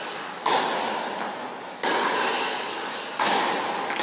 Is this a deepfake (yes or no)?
no